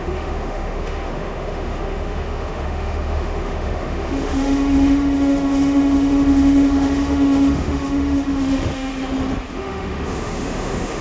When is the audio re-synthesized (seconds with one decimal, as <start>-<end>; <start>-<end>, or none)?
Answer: 0.0-8.9; 9.5-11.0